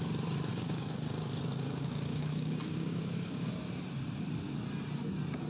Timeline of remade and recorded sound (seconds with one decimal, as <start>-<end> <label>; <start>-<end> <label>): 0.0-0.5 recorded; 0.5-3.5 remade; 3.5-5.5 recorded